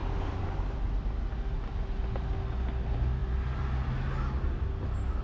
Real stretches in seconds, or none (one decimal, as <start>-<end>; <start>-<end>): 0.0-5.2